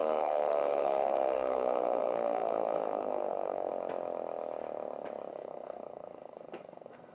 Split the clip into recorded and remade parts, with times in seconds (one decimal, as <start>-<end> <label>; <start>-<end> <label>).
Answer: 0.0-3.7 remade; 3.7-5.3 recorded; 5.3-7.1 remade